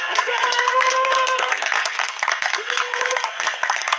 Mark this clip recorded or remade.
remade